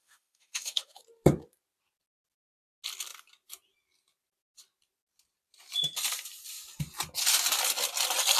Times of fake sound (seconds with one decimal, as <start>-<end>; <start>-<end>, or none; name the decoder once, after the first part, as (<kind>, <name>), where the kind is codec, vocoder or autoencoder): 0.0-1.0 (autoencoder, DAC-VAE)